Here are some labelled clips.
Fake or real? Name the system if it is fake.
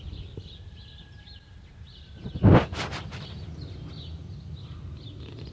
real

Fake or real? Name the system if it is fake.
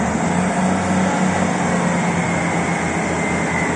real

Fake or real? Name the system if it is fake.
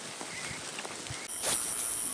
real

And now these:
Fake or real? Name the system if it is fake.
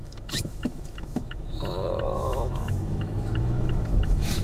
fake, autoencoder, DAC-VAE